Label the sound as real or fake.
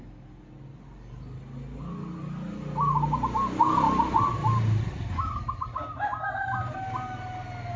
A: real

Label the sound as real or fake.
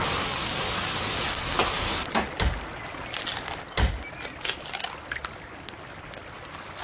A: real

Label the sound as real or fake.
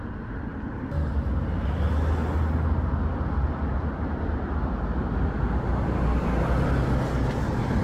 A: real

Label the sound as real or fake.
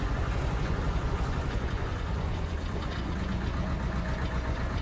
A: fake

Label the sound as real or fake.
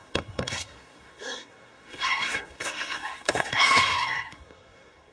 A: fake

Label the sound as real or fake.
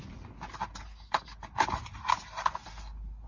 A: real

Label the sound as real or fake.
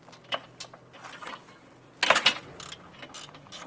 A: real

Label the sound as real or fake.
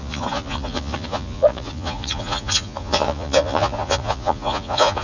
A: fake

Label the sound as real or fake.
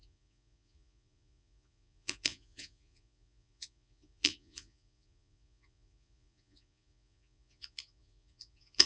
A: fake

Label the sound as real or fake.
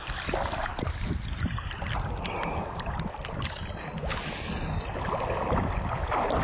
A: real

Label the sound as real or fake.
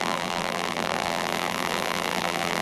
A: fake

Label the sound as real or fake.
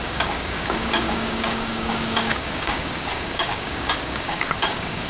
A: fake